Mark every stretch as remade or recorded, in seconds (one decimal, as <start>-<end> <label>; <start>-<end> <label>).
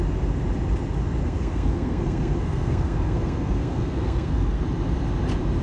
0.0-1.2 recorded; 1.2-4.6 remade; 4.6-5.6 recorded